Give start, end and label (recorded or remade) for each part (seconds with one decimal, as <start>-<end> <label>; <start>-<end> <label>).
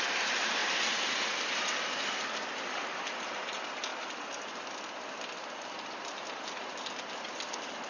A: 0.0-7.9 recorded